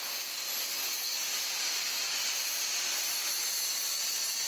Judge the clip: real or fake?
real